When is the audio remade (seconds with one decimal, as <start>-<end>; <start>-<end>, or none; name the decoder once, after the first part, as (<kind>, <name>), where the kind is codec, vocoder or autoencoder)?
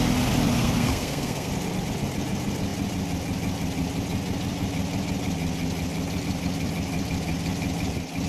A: 0.6-1.5 (codec, SNAC)